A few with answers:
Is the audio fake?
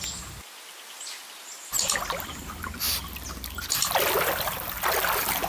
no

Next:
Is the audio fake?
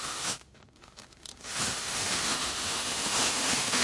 yes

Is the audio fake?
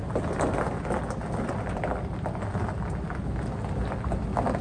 no